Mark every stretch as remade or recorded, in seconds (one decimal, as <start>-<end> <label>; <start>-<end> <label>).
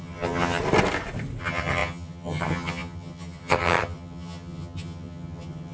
0.0-0.6 remade; 0.6-1.4 recorded; 1.4-5.7 remade